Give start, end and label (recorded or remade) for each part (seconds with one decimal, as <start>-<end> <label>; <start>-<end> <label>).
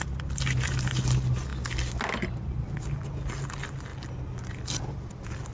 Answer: 0.0-5.5 recorded